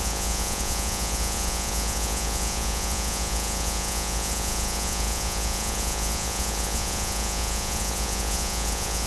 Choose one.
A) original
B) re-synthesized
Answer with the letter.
B